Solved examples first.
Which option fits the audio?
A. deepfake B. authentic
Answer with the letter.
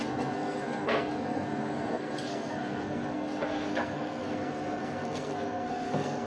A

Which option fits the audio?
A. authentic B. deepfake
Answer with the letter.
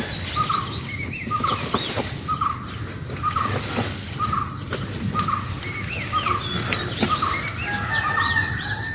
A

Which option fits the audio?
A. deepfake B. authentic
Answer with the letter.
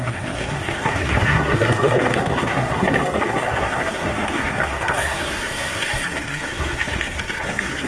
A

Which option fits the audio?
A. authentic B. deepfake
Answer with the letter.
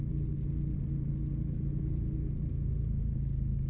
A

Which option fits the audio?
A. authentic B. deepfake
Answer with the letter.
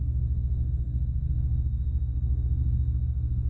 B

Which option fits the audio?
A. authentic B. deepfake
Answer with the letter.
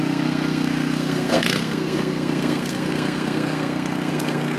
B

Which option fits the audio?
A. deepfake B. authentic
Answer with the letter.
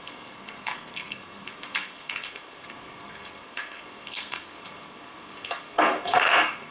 A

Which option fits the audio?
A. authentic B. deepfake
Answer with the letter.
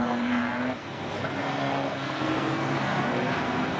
B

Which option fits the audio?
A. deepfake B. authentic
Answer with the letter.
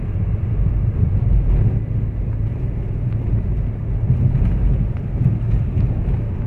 B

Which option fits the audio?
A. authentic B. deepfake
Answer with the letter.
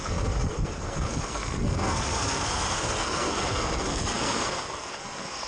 B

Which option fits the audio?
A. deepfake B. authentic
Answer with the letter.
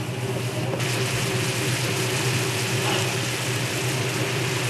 B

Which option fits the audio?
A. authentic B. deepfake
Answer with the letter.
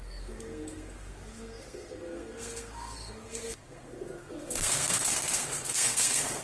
B